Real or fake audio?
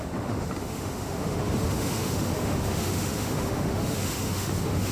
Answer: fake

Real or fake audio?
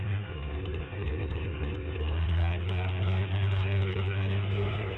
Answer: fake